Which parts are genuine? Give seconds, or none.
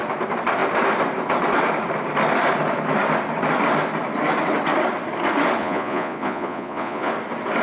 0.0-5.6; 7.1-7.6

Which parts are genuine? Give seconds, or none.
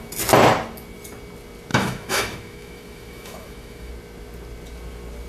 0.0-1.7; 3.9-5.3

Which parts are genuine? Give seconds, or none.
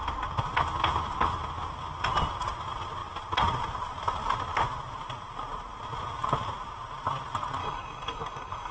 0.0-7.6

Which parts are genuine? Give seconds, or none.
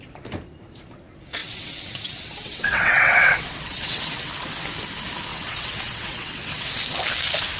0.0-1.4; 4.3-5.3; 6.7-7.6